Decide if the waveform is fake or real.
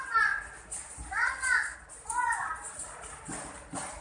real